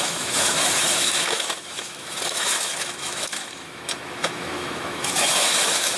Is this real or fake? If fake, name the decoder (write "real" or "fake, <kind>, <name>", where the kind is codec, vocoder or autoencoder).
fake, autoencoder, DAC-VAE